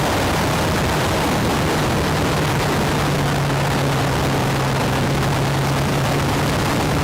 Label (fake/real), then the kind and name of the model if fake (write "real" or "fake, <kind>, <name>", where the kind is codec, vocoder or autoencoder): real